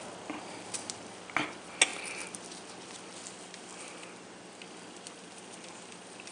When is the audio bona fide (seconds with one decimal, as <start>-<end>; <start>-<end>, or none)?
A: 0.0-6.3